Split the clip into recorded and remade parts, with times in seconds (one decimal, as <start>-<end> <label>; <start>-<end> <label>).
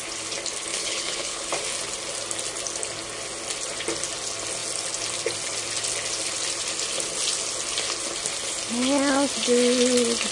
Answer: 0.0-0.7 recorded; 0.7-1.5 remade; 1.5-10.3 recorded